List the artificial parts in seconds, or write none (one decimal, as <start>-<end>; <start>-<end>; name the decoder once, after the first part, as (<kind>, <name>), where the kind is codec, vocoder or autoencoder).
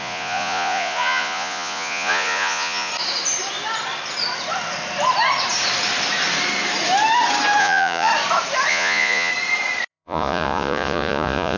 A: 0.0-2.9 (vocoder, Vocos); 7.6-8.1; 8.7-9.3; 9.9-11.6